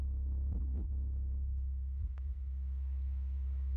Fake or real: fake